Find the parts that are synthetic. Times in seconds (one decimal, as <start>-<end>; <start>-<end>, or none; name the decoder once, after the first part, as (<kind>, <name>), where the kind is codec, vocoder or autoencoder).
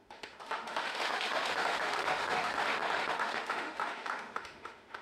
0.0-5.0 (autoencoder, DAC-VAE)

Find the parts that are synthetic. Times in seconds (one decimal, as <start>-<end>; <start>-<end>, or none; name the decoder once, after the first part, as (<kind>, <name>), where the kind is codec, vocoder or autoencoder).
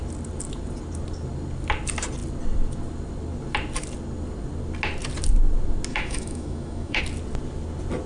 5.9-7.0 (autoencoder, DAC-VAE)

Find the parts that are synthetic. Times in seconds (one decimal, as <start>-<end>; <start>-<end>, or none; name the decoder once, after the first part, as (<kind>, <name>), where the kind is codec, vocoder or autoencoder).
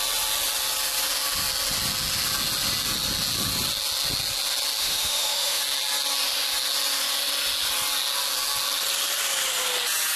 4.8-5.6 (autoencoder, DAC-VAE)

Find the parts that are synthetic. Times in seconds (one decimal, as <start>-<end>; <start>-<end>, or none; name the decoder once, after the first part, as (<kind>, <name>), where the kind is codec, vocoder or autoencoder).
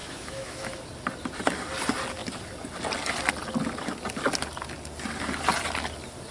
0.0-0.8 (autoencoder, DAC-VAE)